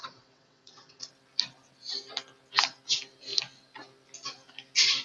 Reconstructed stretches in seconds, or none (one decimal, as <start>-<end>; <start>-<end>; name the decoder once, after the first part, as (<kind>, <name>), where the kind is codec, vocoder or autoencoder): 0.0-1.1 (vocoder, WaveNeXt)